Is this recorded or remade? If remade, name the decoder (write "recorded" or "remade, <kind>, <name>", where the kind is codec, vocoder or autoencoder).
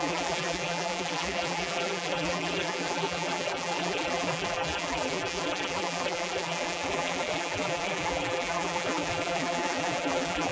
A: remade, vocoder, BigVGAN v2